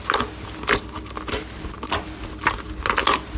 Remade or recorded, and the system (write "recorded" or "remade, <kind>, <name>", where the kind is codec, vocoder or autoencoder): recorded